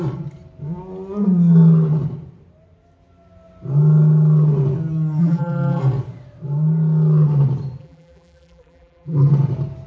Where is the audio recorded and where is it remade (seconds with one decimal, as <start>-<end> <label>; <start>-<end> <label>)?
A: 0.0-5.2 recorded; 5.2-5.8 remade; 5.8-7.8 recorded; 7.8-9.3 remade; 9.3-9.9 recorded